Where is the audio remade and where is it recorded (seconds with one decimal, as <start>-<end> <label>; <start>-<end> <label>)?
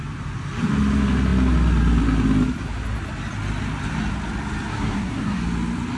0.0-4.7 recorded; 4.7-5.4 remade; 5.4-6.0 recorded